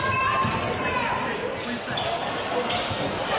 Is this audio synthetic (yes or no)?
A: no